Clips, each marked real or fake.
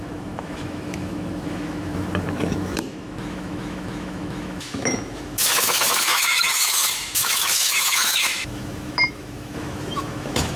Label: fake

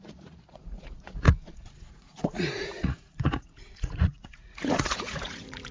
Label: fake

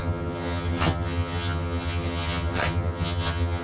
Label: fake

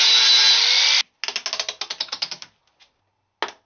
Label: real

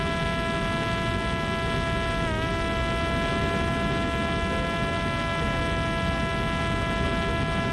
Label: real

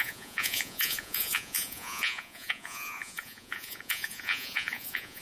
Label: fake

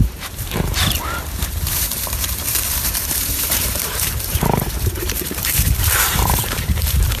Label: fake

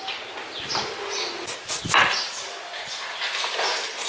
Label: real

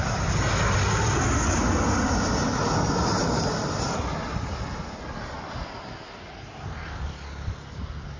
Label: real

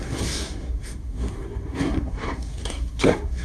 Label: fake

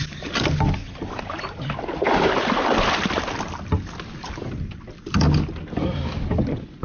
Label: real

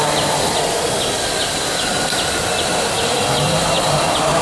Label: real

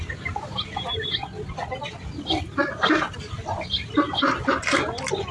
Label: real